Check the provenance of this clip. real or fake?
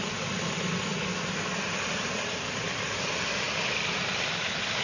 real